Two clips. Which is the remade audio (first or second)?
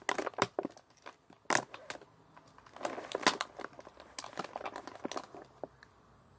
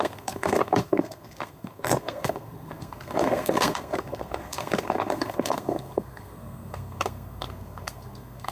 second